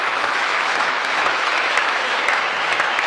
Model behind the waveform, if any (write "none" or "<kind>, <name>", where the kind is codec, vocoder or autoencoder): autoencoder, DAC-VAE